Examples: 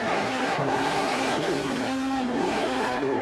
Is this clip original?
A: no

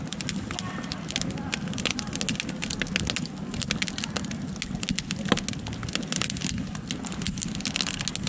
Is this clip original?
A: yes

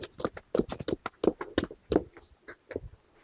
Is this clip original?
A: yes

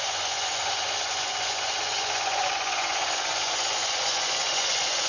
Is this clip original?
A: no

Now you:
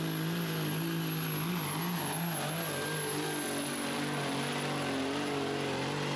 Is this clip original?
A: yes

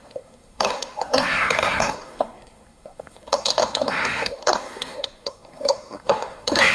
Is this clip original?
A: no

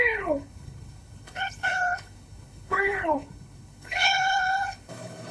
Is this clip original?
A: no